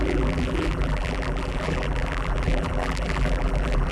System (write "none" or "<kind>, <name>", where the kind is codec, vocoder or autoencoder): vocoder, BigVGAN v2